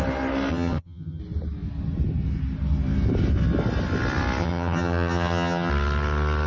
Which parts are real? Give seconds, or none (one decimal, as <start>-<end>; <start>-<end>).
0.0-0.5; 1.2-4.4; 5.7-6.5